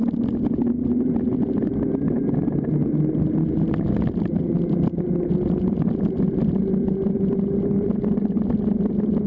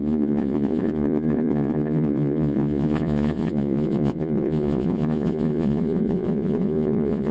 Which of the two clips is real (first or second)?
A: first